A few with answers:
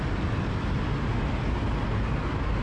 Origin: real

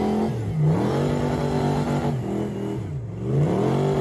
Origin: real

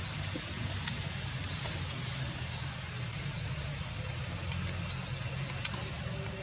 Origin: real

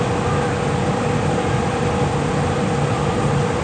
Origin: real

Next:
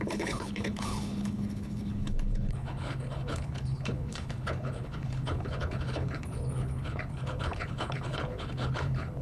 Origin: fake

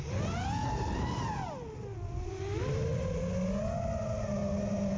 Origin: real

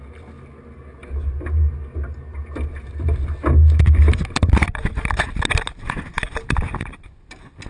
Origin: real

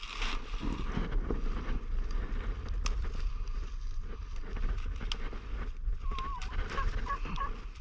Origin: real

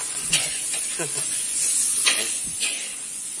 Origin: fake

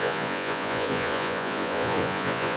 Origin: fake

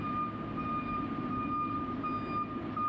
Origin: real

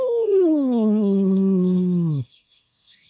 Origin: fake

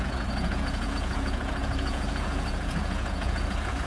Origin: fake